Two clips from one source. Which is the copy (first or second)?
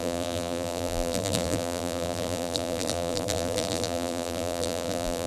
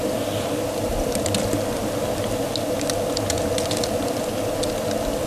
first